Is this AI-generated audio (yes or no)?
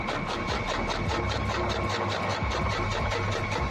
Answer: no